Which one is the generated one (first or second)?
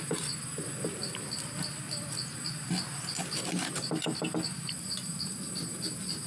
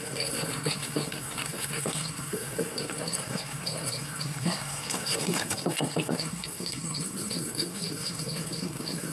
second